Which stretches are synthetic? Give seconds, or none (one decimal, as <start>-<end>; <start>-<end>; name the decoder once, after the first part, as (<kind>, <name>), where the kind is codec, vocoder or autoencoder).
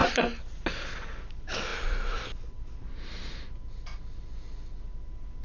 none